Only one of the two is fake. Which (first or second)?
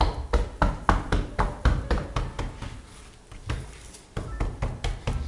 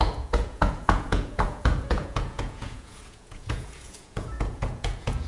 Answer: second